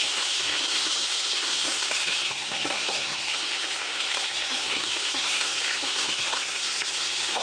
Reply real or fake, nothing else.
fake